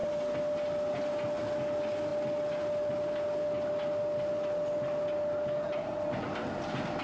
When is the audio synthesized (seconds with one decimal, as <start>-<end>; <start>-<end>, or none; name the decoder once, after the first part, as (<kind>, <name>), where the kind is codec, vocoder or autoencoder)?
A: none